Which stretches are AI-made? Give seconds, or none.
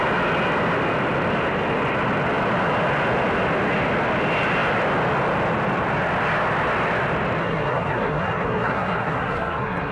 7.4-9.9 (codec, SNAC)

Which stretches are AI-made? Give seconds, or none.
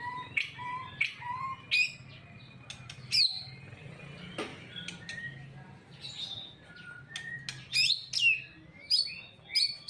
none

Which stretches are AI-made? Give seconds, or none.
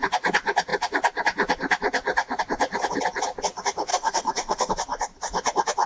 3.9-4.7 (codec, SNAC)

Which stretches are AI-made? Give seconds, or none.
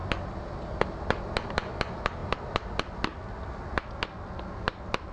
none